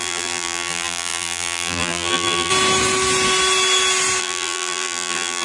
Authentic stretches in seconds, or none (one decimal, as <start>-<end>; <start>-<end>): 2.5-4.2